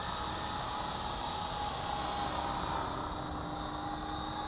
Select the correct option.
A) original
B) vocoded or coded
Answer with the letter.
A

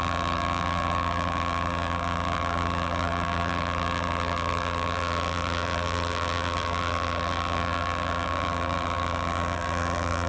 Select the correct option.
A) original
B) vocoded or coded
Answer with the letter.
B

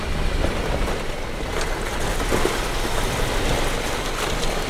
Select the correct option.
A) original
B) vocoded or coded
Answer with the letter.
A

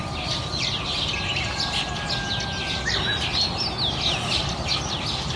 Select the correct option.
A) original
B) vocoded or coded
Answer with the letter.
A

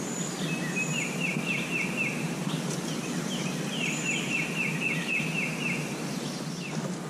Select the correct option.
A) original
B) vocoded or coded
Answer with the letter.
A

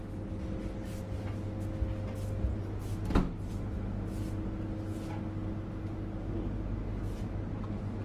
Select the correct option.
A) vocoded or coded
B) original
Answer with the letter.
B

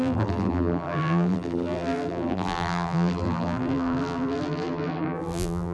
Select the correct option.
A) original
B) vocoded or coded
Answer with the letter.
B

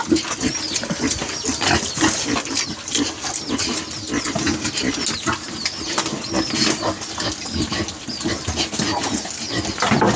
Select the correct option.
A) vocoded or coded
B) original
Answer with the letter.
B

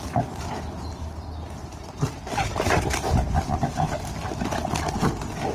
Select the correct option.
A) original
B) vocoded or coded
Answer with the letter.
B